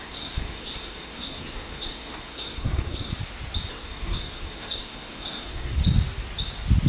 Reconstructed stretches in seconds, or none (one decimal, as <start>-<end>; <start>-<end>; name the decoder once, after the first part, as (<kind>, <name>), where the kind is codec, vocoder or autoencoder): 0.0-3.1 (codec, SNAC); 3.7-5.8